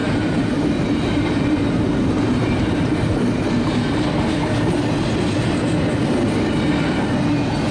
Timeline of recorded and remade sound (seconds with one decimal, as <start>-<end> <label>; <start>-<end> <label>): 0.0-4.6 remade; 4.6-7.7 recorded